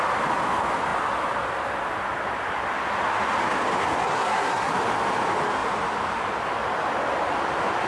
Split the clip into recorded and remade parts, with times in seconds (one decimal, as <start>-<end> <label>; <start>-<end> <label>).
0.0-4.0 recorded; 4.0-4.7 remade; 4.7-7.9 recorded